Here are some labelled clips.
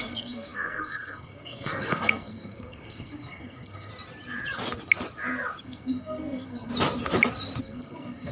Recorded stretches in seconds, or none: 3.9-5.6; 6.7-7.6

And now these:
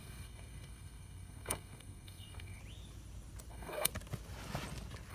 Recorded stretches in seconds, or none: 2.6-3.5; 3.9-5.1

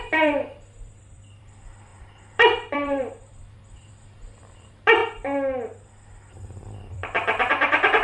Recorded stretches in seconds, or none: 5.0-6.3; 7.0-7.5

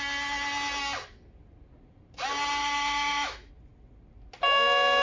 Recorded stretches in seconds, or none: 0.0-2.6; 3.5-5.0

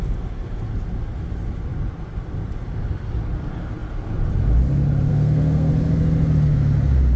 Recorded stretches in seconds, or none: 0.0-5.1; 5.7-7.2

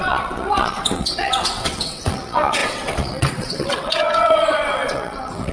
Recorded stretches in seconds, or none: none

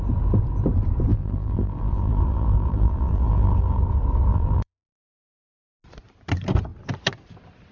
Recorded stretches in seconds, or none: 0.0-1.1; 3.8-4.3; 5.5-7.7